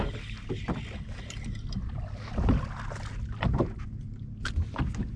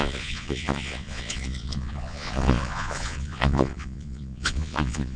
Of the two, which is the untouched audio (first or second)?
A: first